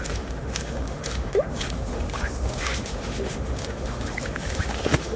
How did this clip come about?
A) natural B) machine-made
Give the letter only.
B